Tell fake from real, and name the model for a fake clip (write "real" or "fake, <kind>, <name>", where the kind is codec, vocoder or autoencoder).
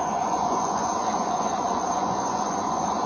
fake, vocoder, Vocos